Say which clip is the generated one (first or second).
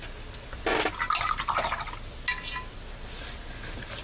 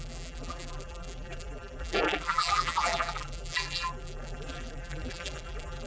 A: second